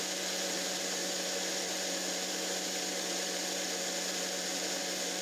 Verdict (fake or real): real